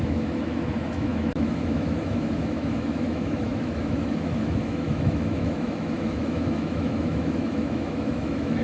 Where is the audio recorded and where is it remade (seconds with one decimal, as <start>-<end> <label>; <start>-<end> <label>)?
0.0-8.6 remade